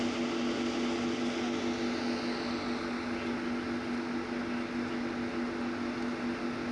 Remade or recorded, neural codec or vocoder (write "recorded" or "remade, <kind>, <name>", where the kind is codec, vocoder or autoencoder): recorded